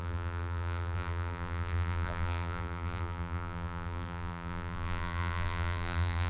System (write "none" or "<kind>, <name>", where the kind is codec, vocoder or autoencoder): vocoder, BigVGAN v2